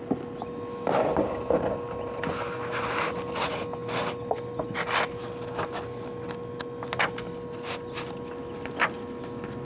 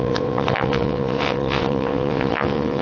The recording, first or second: first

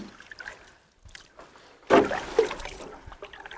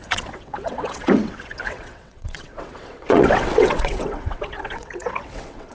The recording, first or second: first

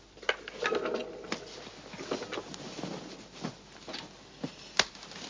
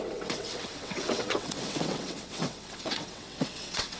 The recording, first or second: first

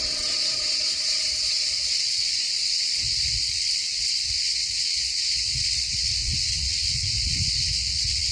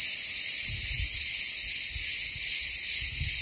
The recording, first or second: second